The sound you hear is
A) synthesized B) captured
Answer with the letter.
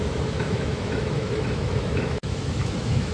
A